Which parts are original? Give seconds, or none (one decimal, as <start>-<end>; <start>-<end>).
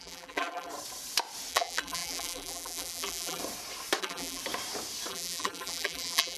0.7-1.5; 3.4-4.0; 4.4-5.1